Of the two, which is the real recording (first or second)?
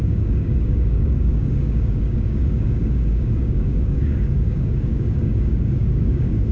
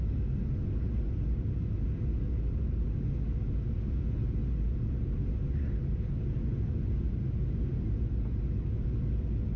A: second